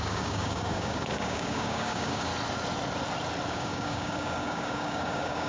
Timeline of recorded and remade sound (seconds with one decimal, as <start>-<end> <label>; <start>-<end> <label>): 0.0-2.3 remade; 2.3-3.5 recorded; 3.5-5.5 remade